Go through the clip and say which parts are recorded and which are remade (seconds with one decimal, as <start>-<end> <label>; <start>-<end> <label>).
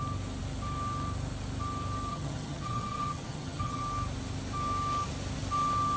0.0-2.1 recorded; 2.1-3.8 remade; 3.8-6.0 recorded